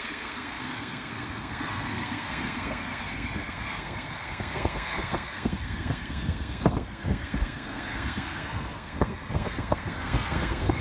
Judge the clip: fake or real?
fake